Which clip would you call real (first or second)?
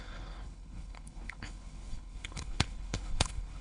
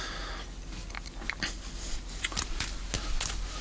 second